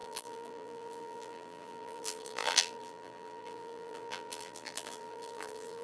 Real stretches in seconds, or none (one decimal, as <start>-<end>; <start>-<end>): none